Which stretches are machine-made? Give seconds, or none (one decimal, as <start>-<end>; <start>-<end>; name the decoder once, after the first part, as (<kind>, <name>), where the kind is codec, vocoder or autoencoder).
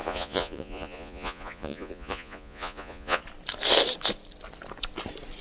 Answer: 0.0-3.2 (vocoder, Vocos)